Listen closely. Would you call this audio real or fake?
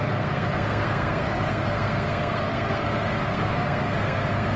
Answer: fake